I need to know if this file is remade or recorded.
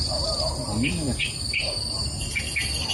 recorded